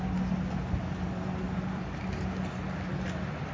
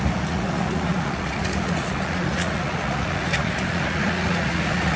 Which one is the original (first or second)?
first